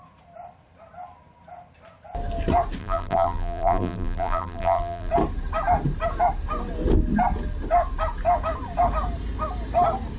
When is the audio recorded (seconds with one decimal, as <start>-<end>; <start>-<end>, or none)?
0.0-2.8; 5.1-10.2